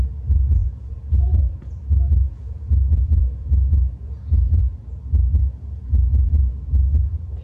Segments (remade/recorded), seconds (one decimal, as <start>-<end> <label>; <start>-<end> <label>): 0.0-4.6 remade; 4.6-5.4 recorded; 5.4-7.4 remade